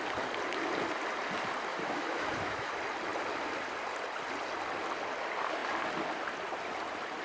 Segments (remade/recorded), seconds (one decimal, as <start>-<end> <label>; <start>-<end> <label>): 0.0-1.7 recorded; 1.7-2.7 remade; 2.7-7.2 recorded